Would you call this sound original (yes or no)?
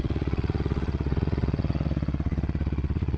no